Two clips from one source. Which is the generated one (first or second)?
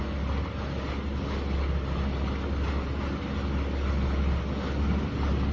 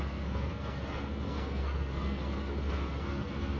second